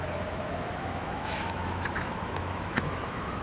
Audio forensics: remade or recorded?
remade